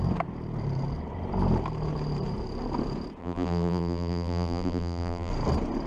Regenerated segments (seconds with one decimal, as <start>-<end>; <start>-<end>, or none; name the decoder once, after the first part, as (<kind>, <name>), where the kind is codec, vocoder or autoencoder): 3.2-5.3 (vocoder, BigVGAN v2)

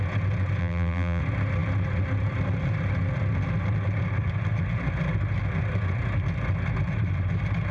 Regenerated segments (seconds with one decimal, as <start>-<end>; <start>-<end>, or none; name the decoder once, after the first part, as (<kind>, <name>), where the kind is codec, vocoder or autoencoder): 0.6-1.2 (vocoder, BigVGAN v2)

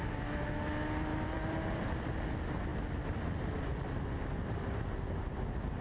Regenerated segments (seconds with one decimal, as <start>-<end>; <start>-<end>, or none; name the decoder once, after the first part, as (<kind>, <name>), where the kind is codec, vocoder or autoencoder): 1.1-2.1 (vocoder, BigVGAN v2); 2.7-3.4

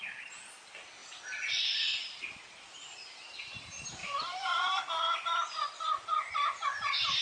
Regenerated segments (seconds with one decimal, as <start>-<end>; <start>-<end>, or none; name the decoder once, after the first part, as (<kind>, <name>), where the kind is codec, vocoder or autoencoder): 1.0-2.2 (vocoder, BigVGAN v2); 4.0-4.6

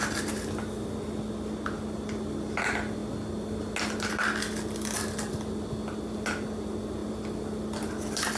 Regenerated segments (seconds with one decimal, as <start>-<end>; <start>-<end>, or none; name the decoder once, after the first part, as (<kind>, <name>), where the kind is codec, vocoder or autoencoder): none

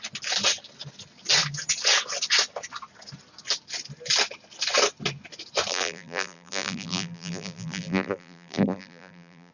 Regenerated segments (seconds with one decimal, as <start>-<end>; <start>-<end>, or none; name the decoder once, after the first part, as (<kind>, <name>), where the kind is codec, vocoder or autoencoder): 5.7-9.5 (vocoder, BigVGAN v2)

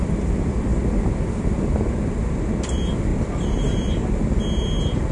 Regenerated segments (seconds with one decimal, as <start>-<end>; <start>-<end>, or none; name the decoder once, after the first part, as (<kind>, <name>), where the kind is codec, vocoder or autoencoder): 0.7-2.4 (vocoder, BigVGAN v2); 3.1-4.4